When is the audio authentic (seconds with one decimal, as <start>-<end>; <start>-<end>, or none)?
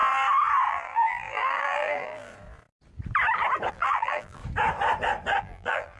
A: 0.0-0.7; 2.3-3.7; 4.4-5.4